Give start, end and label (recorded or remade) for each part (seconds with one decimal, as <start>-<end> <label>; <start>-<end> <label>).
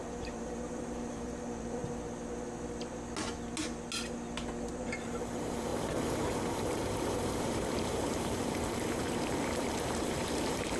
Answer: 0.0-1.8 remade; 1.8-4.7 recorded; 4.7-10.8 remade